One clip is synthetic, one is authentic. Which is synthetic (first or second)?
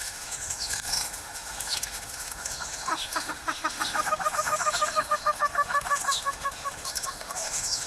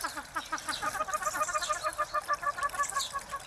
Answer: first